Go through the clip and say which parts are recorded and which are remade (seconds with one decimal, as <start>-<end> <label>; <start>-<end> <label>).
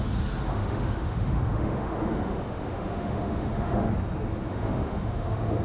0.0-0.5 recorded; 0.5-3.9 remade; 3.9-4.5 recorded; 4.5-5.6 remade